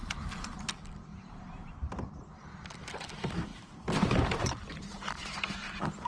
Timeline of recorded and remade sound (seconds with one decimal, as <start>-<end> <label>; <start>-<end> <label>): 0.0-0.7 remade; 0.7-1.1 recorded; 1.1-2.1 remade; 2.1-3.5 recorded; 3.5-5.4 remade; 5.4-6.1 recorded